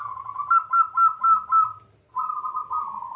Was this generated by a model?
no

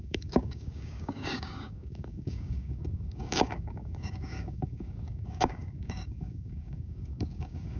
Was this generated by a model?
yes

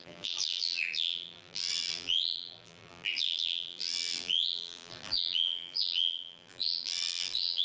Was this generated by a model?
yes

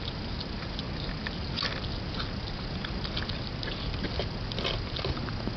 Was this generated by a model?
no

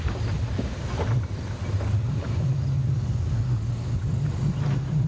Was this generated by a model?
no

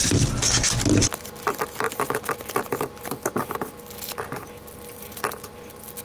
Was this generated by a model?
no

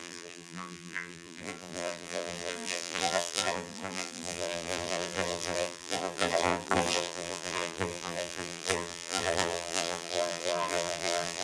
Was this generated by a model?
yes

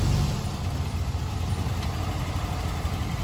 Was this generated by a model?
no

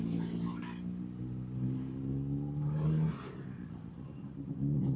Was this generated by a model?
no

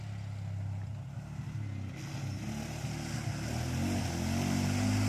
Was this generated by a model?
no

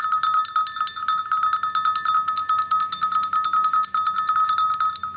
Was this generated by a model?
no